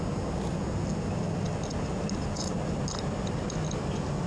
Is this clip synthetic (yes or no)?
no